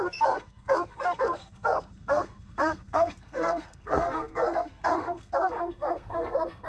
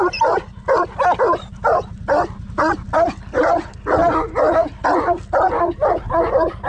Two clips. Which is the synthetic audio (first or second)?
first